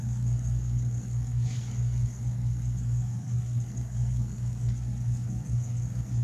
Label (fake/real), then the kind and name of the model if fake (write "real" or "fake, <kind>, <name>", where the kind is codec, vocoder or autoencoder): fake, codec, SNAC